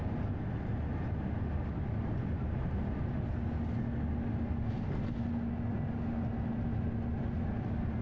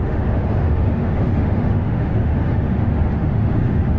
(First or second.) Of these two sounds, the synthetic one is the second